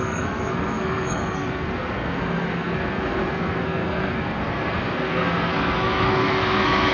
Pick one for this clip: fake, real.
fake